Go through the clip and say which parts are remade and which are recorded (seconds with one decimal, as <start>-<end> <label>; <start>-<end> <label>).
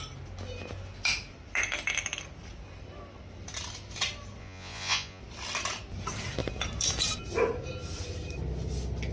0.0-4.4 recorded; 4.4-5.2 remade; 5.2-9.1 recorded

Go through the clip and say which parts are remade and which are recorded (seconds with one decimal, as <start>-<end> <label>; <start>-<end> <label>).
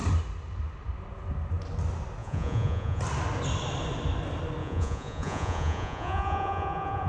0.0-2.2 recorded; 2.2-3.0 remade; 3.0-4.6 recorded; 4.6-7.1 remade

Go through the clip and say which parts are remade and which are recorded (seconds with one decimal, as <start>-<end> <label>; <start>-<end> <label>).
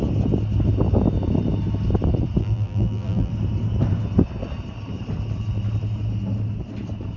0.0-2.4 recorded; 2.4-3.3 remade; 3.3-7.2 recorded